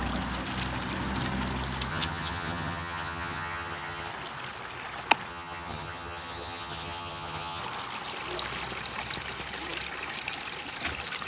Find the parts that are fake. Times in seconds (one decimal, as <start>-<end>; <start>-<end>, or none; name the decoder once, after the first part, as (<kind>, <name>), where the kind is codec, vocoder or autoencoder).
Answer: 1.9-4.1 (vocoder, HiFi-GAN); 5.3-7.6